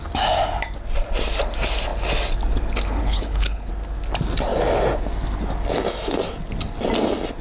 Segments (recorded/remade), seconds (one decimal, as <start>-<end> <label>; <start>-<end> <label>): 0.0-3.0 recorded; 3.0-3.7 remade; 3.7-7.4 recorded